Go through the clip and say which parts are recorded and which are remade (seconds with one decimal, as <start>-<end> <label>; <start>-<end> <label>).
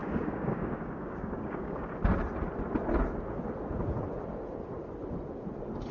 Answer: 0.0-1.9 remade; 1.9-5.9 recorded